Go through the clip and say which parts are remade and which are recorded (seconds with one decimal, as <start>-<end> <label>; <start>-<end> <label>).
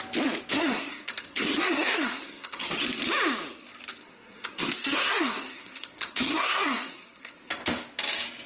0.0-0.5 recorded; 0.5-2.7 remade; 2.7-4.0 recorded; 4.0-7.5 remade; 7.5-8.5 recorded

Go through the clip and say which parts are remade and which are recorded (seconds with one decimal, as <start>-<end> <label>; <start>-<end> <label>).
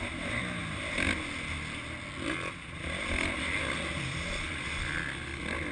0.0-5.7 recorded